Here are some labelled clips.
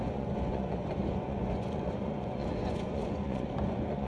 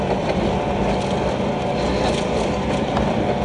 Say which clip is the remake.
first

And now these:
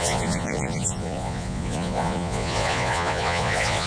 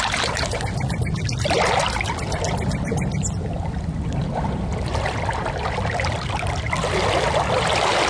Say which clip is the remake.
first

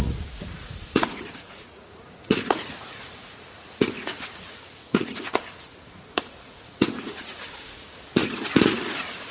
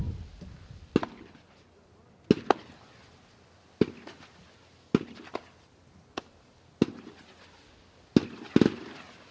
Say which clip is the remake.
first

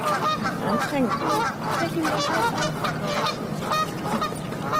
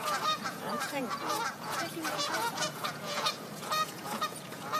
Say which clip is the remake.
second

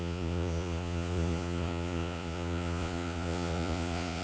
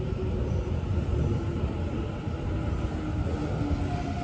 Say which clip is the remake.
first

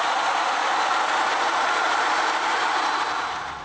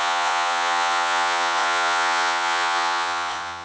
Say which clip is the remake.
second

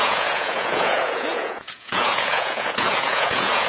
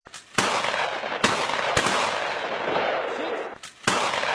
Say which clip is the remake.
first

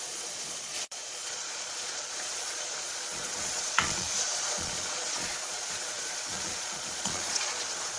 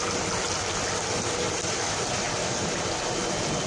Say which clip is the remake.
first